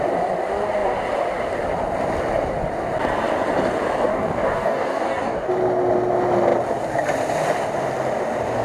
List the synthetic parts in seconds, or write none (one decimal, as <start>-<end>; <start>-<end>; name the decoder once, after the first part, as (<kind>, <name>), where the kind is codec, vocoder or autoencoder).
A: 4.1-5.5 (codec, DAC)